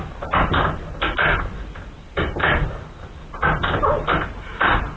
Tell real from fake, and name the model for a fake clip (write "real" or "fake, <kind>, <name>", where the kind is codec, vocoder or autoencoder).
real